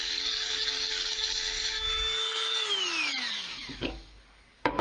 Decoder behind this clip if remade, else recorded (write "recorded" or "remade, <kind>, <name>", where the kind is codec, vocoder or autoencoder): remade, codec, DAC